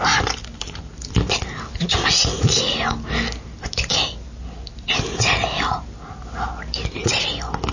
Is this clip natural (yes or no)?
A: yes